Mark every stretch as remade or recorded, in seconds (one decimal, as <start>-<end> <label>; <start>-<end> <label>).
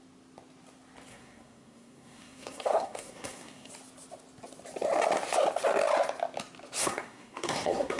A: 0.0-1.1 recorded; 1.1-3.7 remade; 3.7-6.8 recorded; 6.8-8.0 remade